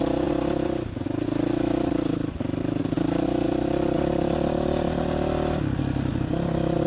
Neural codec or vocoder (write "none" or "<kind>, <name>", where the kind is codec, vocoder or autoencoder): none